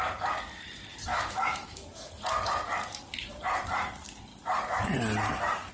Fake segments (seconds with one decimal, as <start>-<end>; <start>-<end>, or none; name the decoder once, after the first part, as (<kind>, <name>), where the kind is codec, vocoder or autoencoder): 1.1-2.1 (autoencoder, DAC-VAE)